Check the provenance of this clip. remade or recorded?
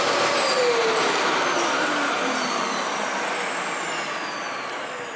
recorded